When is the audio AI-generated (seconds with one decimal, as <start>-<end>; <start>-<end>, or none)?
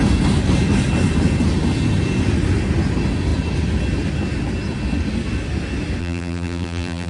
6.0-7.1